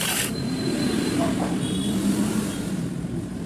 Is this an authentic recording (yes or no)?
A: no